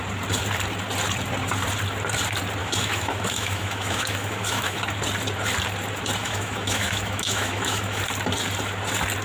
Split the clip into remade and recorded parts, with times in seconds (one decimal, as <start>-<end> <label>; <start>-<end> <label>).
0.0-2.6 recorded; 2.6-4.8 remade; 4.8-6.2 recorded; 6.2-8.0 remade; 8.0-9.2 recorded